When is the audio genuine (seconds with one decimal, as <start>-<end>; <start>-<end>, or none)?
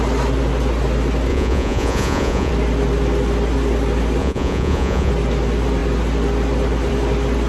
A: 0.0-1.3; 2.5-4.2; 5.1-7.5